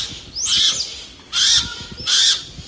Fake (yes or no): no